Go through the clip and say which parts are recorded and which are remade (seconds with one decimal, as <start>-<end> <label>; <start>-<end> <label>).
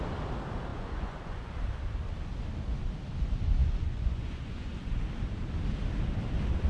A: 0.0-0.7 recorded; 0.7-1.5 remade; 1.5-3.6 recorded; 3.6-5.0 remade; 5.0-6.7 recorded